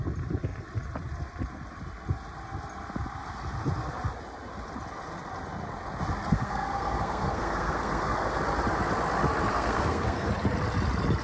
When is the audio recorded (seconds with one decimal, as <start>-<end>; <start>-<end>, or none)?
0.0-6.3; 8.4-9.5; 10.3-11.2